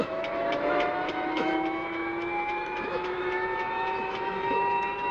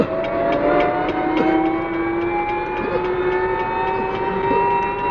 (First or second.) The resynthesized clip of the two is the first